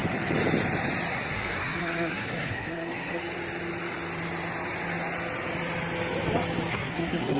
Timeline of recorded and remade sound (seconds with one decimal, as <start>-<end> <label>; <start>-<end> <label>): 0.0-1.1 recorded; 1.1-3.2 remade; 3.2-6.7 recorded; 6.7-7.4 remade